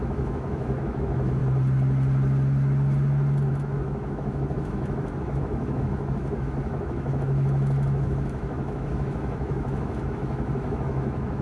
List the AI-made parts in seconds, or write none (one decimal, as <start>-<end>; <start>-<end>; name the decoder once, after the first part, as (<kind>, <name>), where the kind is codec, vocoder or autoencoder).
0.0-1.4 (autoencoder, DAC-VAE); 3.5-11.4